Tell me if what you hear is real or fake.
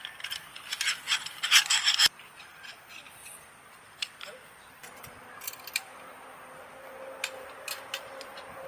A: fake